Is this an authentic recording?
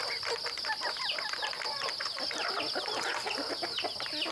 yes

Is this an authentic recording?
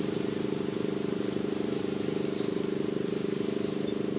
no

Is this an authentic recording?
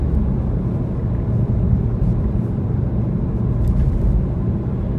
yes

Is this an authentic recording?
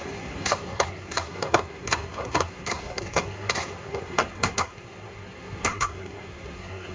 no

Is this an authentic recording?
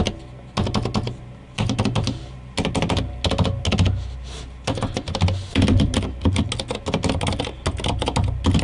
yes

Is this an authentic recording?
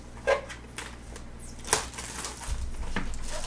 yes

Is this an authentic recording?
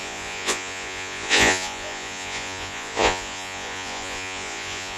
no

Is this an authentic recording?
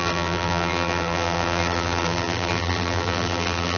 no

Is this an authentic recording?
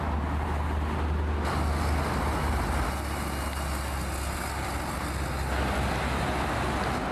yes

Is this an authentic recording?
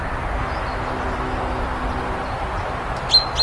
yes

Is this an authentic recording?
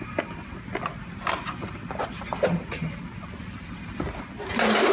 yes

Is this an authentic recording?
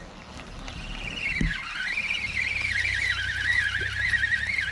yes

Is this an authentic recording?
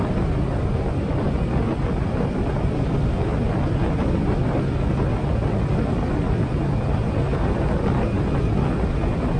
yes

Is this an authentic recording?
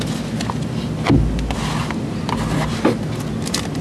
yes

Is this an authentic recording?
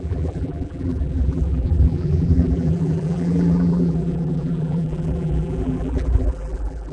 no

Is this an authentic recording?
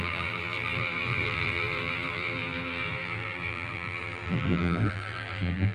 no